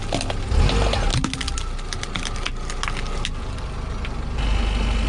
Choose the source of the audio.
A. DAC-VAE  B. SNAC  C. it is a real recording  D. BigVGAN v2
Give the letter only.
C